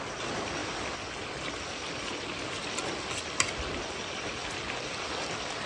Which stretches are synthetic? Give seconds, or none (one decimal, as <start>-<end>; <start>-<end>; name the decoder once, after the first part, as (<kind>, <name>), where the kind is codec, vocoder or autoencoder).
none